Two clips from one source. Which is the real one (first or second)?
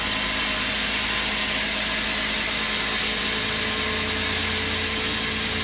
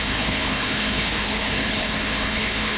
first